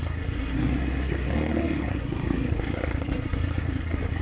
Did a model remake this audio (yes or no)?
yes